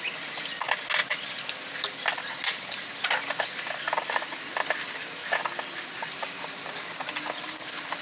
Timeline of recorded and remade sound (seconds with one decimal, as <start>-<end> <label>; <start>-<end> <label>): 0.0-8.0 recorded

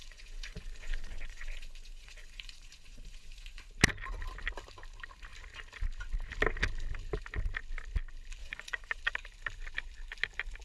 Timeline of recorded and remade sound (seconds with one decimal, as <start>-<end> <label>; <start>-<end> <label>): 0.0-3.7 remade; 3.7-8.4 recorded; 8.4-9.0 remade; 9.0-10.6 recorded

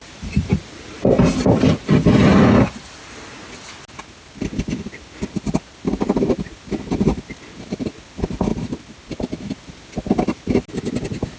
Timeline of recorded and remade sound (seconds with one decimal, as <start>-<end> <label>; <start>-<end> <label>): 0.0-11.4 recorded

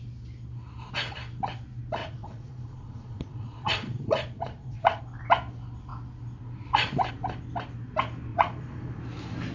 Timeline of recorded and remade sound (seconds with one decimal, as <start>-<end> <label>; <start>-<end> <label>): 0.0-2.0 recorded; 2.0-5.0 remade; 5.0-8.3 recorded; 8.3-9.0 remade; 9.0-9.5 recorded

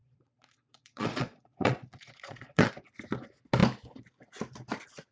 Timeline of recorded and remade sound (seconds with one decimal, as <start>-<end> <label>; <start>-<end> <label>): 0.0-2.7 remade; 2.7-5.1 recorded

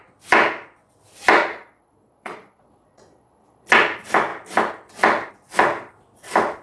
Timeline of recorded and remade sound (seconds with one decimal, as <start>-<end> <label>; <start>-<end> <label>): 0.0-1.4 recorded; 1.4-3.7 remade; 3.7-6.6 recorded

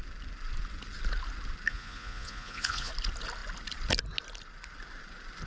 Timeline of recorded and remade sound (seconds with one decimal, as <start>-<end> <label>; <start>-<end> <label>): 0.0-1.7 recorded; 1.7-2.9 remade; 2.9-5.5 recorded